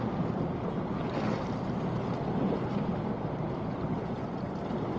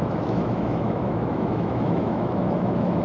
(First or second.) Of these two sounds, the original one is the first